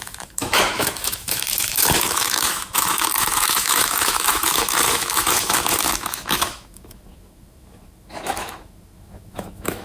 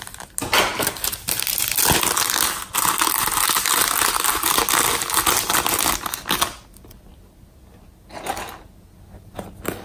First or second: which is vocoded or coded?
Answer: first